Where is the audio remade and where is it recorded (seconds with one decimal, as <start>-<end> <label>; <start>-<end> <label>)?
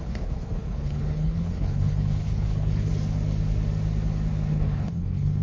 0.0-2.9 remade; 2.9-4.5 recorded; 4.5-5.4 remade